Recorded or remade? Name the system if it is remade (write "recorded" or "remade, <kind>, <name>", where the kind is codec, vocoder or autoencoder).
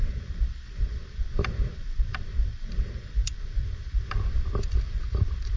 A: remade, vocoder, BigVGAN v2